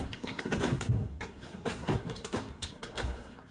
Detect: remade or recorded remade